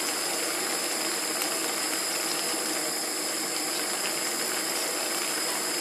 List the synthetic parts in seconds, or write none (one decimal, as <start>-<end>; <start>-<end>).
1.6-5.1